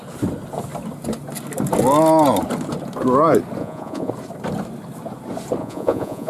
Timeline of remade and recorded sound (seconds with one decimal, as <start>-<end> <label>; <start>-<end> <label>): 0.0-3.6 recorded; 3.6-4.1 remade; 4.1-5.6 recorded; 5.6-6.3 remade